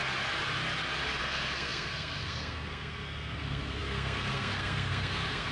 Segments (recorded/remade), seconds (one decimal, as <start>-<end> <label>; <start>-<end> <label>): 0.0-1.2 recorded; 1.2-5.5 remade